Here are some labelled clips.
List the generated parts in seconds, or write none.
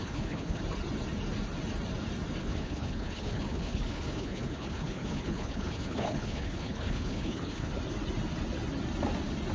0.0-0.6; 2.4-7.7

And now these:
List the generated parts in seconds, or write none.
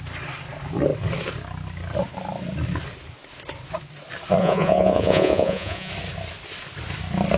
4.4-5.9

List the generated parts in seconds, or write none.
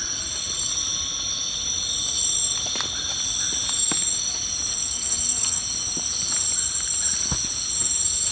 4.7-5.6